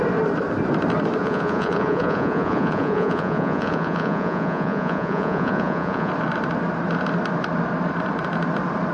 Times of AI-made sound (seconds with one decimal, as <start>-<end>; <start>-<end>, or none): 1.2-6.1